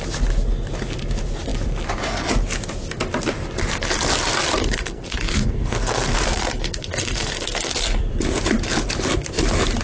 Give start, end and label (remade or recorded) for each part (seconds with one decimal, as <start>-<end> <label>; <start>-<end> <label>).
0.0-4.6 recorded; 4.6-8.1 remade; 8.1-9.8 recorded